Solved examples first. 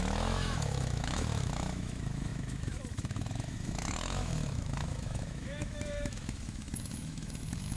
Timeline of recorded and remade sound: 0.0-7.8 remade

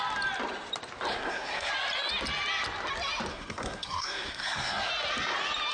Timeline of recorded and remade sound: 0.0-1.1 recorded; 1.1-1.7 remade; 1.7-3.3 recorded; 3.3-4.9 remade; 4.9-5.7 recorded

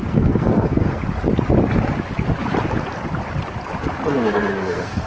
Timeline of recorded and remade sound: 0.0-1.0 remade; 1.0-4.1 recorded; 4.1-5.1 remade